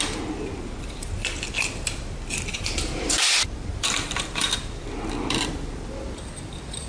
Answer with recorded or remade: remade